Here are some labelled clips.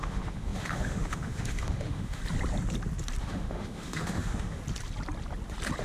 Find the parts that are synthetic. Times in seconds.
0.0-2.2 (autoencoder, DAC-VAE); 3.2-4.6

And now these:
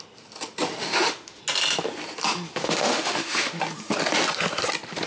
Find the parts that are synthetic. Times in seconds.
0.8-1.4 (autoencoder, DAC-VAE); 2.6-3.6

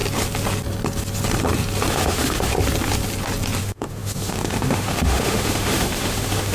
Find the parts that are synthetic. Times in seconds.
1.9-2.5 (autoencoder, DAC-VAE); 3.6-6.5